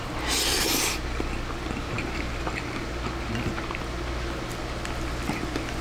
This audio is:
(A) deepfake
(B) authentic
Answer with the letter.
B